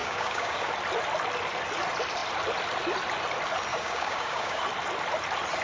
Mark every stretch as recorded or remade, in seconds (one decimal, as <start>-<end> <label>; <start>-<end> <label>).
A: 0.0-0.7 remade; 0.7-3.7 recorded; 3.7-4.6 remade; 4.6-5.6 recorded